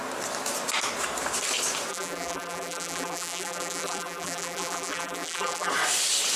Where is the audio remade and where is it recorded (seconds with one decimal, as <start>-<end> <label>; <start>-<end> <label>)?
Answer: 0.0-1.9 recorded; 1.9-5.7 remade; 5.7-6.4 recorded